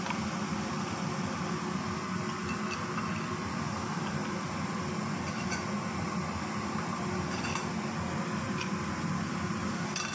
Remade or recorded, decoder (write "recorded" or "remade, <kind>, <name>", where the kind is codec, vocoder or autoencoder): recorded